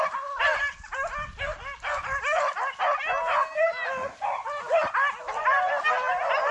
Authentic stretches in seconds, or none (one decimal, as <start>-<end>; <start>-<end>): 0.0-6.5